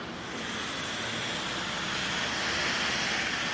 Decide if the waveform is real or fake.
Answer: real